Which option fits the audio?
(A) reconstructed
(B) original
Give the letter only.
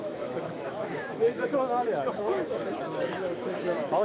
A